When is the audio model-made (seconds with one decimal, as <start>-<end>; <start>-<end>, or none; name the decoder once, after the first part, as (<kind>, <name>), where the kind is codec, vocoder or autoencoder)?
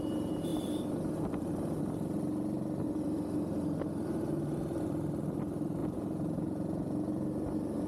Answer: 5.8-7.2 (vocoder, Vocos)